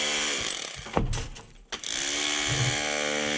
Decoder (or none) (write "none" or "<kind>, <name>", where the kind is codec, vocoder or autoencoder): none